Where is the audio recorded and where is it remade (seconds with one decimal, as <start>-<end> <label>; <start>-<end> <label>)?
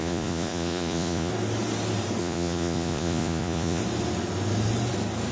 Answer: 0.0-1.3 remade; 1.3-2.2 recorded; 2.2-3.8 remade; 3.8-5.3 recorded